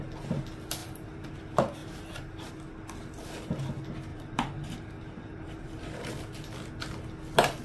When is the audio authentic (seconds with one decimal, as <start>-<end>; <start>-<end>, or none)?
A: 0.0-0.8; 1.4-1.8; 2.5-4.1; 6.1-7.6